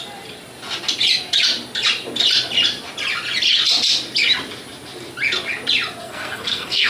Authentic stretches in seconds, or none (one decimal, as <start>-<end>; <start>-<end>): 0.0-6.0